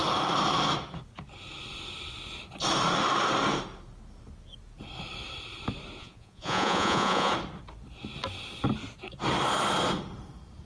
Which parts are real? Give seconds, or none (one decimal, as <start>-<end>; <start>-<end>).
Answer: 0.0-6.0; 7.3-10.7